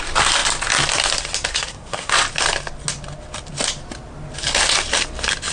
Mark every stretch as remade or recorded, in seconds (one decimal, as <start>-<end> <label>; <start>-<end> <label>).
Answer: 0.0-1.5 recorded; 1.5-2.1 remade; 2.1-5.5 recorded